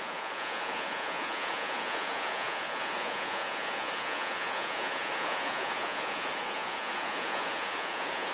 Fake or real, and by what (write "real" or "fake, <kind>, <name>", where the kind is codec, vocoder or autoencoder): fake, vocoder, Vocos